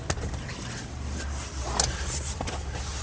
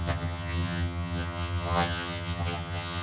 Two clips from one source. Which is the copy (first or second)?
second